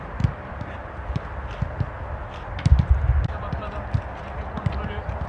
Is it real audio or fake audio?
real